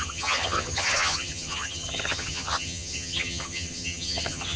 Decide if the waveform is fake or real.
fake